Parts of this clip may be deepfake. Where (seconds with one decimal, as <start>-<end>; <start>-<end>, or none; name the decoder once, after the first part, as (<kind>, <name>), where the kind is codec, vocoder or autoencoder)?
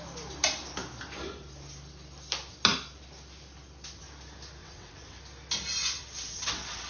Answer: 4.6-5.2 (vocoder, WaveNeXt); 5.8-6.9